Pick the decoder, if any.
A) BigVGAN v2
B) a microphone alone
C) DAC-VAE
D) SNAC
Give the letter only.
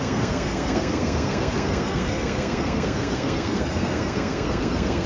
D